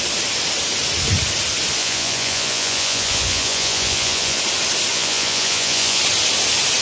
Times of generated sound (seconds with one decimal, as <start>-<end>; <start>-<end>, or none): 1.8-4.4; 4.9-6.0